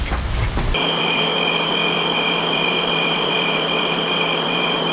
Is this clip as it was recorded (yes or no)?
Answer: no